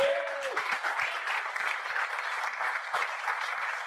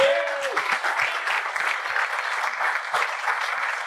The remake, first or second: first